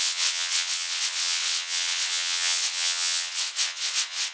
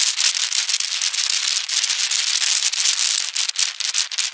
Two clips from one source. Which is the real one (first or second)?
second